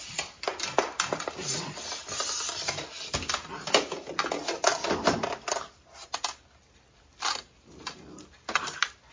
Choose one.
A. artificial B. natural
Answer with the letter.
B